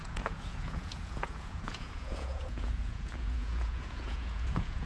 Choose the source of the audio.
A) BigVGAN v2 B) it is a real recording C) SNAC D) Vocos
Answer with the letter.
D